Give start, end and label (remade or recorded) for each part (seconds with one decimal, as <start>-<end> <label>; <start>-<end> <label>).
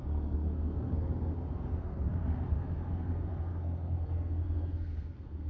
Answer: 0.0-5.5 remade